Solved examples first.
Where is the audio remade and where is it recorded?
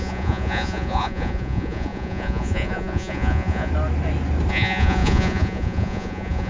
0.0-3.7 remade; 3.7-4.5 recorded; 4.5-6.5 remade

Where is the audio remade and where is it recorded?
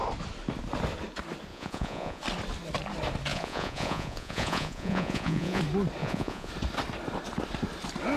0.0-1.5 recorded; 1.5-2.2 remade; 2.2-3.3 recorded; 3.3-5.6 remade; 5.6-6.0 recorded; 6.0-6.5 remade; 6.5-8.2 recorded